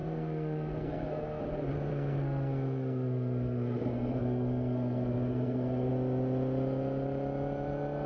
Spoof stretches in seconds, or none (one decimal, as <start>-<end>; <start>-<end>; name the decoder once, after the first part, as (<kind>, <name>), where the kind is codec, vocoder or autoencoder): 0.0-1.4 (codec, SNAC); 1.9-5.9